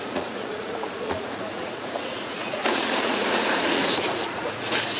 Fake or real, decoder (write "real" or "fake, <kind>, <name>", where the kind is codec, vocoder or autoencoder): fake, vocoder, Vocos